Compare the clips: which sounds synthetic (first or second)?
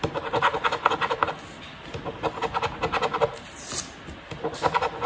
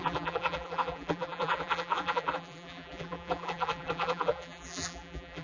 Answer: second